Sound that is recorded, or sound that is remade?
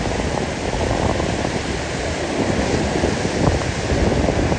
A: recorded